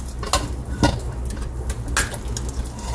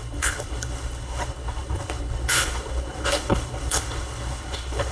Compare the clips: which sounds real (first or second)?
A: first